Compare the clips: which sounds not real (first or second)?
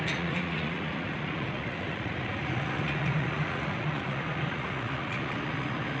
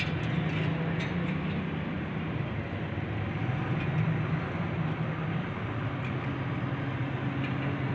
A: first